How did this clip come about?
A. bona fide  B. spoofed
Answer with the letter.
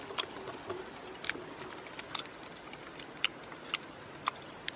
A